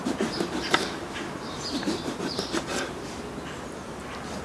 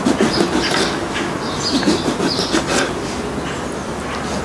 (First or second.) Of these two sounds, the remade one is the first